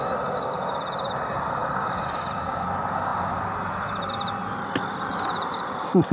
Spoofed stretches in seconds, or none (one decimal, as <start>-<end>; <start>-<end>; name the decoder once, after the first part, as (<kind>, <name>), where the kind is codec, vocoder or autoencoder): 1.6-2.3 (vocoder, BigVGAN v2); 3.1-4.1